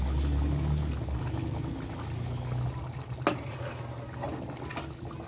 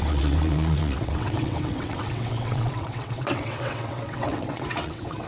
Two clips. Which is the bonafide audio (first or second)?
first